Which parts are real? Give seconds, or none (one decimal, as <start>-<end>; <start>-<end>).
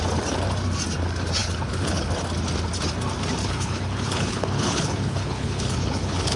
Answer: 0.0-1.4; 2.1-3.4